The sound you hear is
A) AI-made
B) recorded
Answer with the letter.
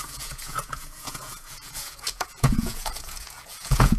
A